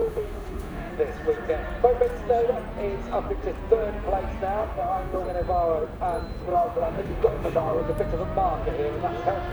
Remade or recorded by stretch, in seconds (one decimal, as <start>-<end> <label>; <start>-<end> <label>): 0.0-0.9 remade; 0.9-4.6 recorded; 4.6-5.2 remade; 5.2-6.5 recorded; 6.5-7.8 remade; 7.8-9.5 recorded